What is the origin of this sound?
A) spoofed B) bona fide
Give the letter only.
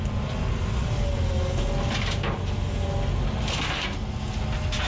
B